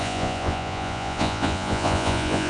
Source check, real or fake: fake